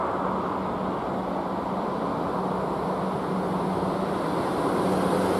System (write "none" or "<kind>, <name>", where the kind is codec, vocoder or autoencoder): none